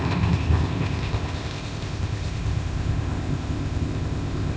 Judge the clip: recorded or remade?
remade